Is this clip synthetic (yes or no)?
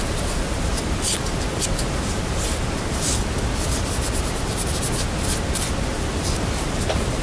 no